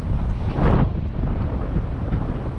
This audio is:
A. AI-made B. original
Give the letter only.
B